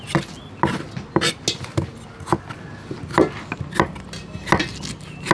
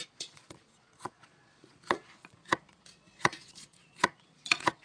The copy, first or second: second